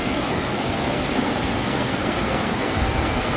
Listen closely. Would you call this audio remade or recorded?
remade